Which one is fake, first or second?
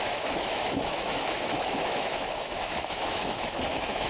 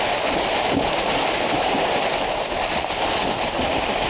first